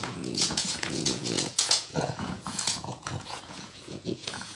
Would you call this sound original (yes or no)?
no